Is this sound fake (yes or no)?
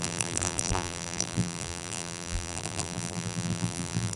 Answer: yes